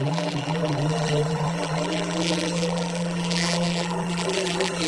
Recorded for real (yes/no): no